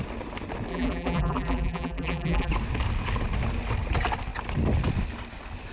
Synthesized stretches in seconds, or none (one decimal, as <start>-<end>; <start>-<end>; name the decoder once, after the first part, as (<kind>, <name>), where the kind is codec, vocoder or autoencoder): 0.7-2.5 (vocoder, BigVGAN v2)